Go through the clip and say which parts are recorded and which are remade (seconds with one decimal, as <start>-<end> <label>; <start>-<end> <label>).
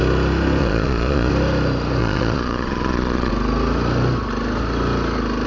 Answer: 0.0-0.6 recorded; 0.6-1.3 remade; 1.3-2.0 recorded; 2.0-3.3 remade; 3.3-5.5 recorded